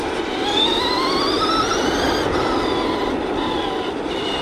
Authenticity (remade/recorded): recorded